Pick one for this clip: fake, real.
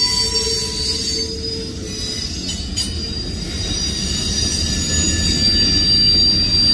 real